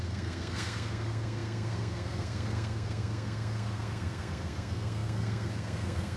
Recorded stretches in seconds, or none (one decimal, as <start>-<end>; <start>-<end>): none